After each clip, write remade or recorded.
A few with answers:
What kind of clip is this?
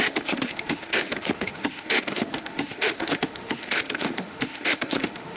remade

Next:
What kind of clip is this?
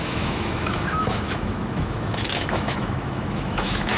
remade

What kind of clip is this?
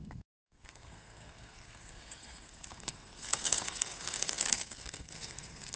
remade